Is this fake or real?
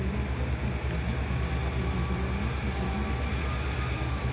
real